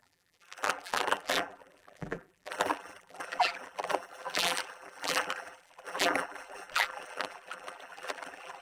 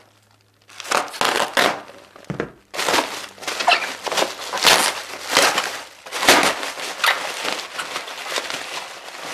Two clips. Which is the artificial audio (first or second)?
first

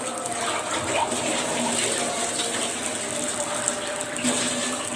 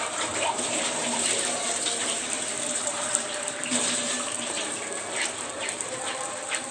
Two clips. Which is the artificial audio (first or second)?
second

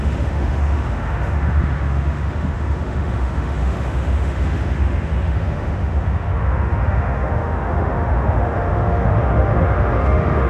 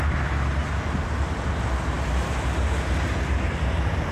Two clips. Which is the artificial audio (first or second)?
first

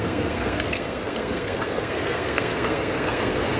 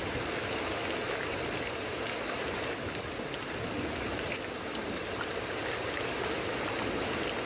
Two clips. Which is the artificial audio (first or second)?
first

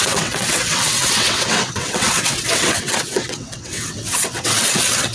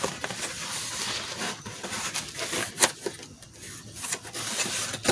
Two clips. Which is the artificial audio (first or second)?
first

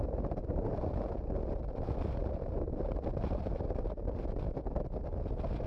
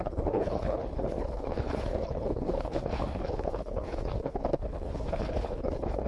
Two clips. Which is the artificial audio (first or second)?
second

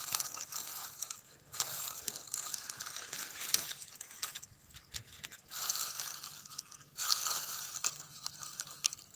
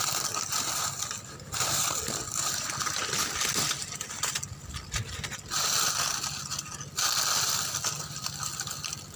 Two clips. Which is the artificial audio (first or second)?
first